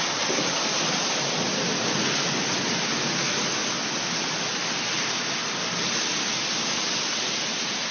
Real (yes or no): yes